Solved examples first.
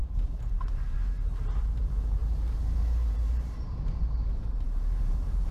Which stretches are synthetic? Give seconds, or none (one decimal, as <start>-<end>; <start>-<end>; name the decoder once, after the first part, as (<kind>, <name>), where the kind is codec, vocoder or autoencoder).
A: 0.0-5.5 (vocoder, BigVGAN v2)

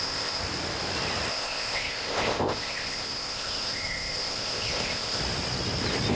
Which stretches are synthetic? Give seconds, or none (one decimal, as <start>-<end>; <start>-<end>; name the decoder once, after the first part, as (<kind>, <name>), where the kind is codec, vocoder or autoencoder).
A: 0.0-0.4 (codec, ZipCodec); 1.3-5.2

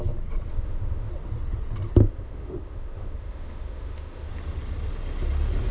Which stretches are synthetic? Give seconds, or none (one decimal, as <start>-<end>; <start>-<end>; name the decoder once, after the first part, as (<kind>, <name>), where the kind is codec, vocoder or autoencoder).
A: 0.5-1.1 (autoencoder, DAC-VAE); 2.0-4.3